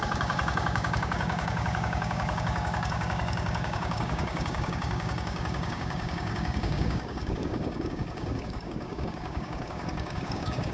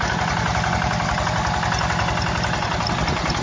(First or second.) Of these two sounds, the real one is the second